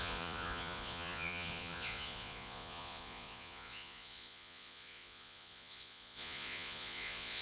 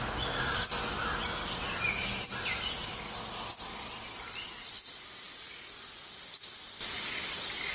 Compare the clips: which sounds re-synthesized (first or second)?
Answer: first